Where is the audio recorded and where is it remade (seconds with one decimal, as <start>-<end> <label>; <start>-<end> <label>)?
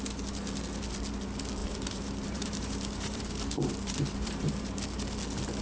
0.0-1.6 recorded; 1.6-4.8 remade; 4.8-5.6 recorded